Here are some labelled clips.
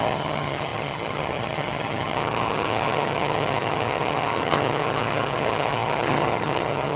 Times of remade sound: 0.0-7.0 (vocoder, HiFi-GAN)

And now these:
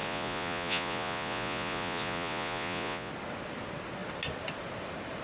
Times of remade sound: 0.0-3.1 (vocoder, Vocos)

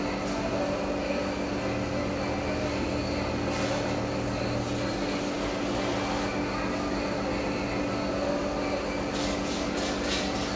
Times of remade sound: none

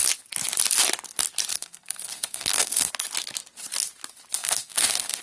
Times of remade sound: 1.5-2.9 (codec, SNAC); 4.4-5.2